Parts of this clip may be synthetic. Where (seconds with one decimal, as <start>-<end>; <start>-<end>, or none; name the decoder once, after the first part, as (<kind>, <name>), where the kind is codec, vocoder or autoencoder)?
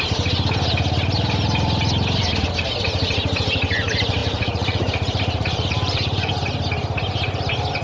4.2-6.3 (vocoder, BigVGAN v2)